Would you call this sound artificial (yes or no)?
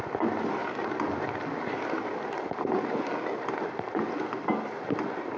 no